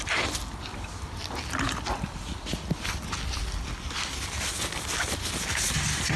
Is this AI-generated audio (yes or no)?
no